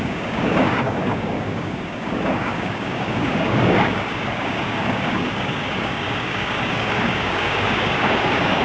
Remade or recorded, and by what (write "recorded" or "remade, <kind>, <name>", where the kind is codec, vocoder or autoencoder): remade, codec, DAC